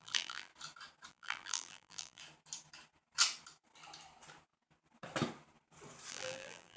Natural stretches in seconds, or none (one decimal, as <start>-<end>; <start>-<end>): 0.5-1.1; 2.2-6.1